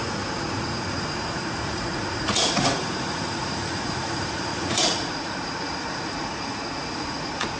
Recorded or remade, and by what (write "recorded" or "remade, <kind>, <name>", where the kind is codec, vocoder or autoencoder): remade, vocoder, Vocos